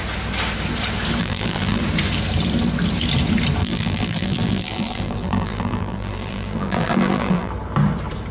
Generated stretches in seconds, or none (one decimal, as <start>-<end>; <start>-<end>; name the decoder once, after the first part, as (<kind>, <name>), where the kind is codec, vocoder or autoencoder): 1.2-1.8 (vocoder, BigVGAN v2); 3.6-7.5

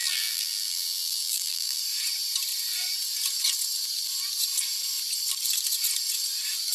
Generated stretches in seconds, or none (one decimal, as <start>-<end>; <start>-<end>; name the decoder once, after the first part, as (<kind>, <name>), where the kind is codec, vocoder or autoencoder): 0.0-1.8 (vocoder, BigVGAN v2)

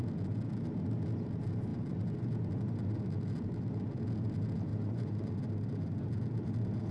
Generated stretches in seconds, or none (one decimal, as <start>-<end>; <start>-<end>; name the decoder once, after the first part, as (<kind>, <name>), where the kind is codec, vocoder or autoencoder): 4.7-5.3 (vocoder, Vocos)

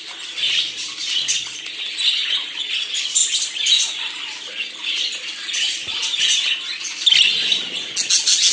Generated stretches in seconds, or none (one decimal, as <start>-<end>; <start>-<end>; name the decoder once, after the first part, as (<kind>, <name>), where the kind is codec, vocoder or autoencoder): 0.8-1.6 (vocoder, BigVGAN v2)

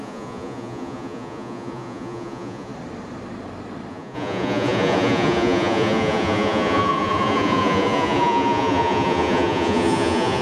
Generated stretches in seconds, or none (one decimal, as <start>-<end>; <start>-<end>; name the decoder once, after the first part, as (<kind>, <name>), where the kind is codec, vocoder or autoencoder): 0.0-2.7 (vocoder, Vocos); 3.9-10.4

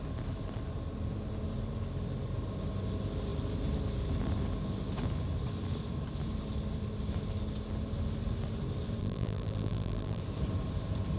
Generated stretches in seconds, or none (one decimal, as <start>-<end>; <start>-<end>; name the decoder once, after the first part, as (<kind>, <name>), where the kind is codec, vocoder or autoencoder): 9.0-10.2 (vocoder, BigVGAN v2)

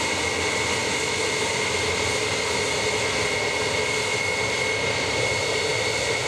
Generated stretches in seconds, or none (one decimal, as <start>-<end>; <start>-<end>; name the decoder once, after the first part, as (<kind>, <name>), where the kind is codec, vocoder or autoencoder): none

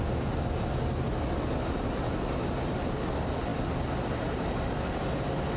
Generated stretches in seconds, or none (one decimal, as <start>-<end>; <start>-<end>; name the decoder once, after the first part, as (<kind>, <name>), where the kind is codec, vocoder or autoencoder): none